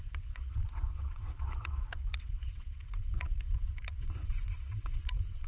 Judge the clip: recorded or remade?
remade